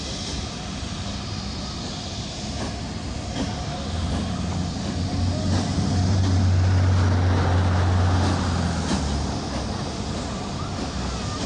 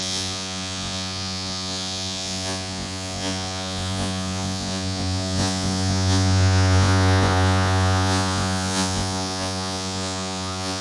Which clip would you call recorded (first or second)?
first